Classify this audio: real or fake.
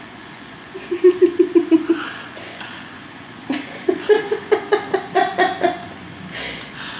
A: fake